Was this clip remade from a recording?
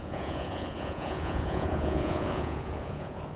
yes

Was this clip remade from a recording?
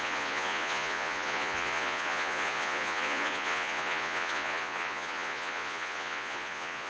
yes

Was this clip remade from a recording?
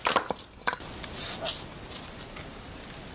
no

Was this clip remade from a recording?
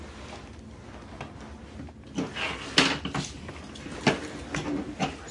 no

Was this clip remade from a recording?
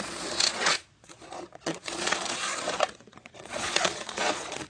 yes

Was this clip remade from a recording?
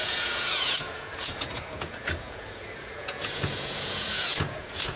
yes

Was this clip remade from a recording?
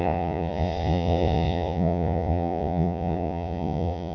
yes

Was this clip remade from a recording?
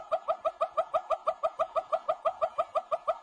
yes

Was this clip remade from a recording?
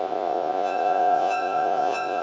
yes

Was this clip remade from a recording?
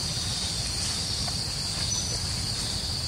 no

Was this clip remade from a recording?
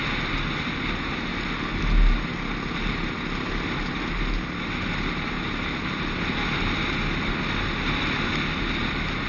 no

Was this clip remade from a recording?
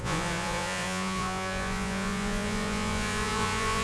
yes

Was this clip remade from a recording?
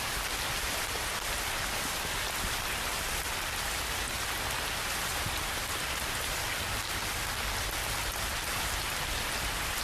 no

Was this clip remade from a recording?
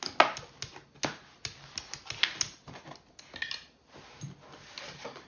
no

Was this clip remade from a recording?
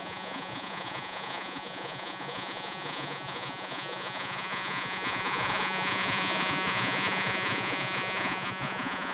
yes